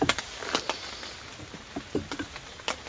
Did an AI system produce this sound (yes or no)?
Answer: no